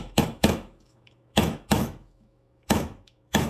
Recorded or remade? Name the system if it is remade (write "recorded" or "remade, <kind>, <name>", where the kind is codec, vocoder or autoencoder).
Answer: remade, autoencoder, DAC-VAE